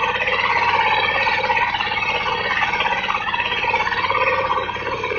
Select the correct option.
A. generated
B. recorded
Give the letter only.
A